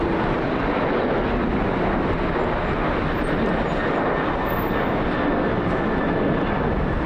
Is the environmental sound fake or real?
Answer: real